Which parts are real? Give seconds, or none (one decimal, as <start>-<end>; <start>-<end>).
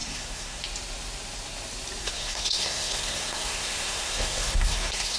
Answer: 0.6-2.0